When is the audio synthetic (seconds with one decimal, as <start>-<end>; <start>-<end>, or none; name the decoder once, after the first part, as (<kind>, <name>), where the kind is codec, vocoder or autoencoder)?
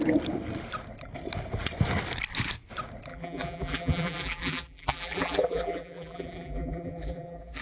3.1-7.6 (vocoder, BigVGAN v2)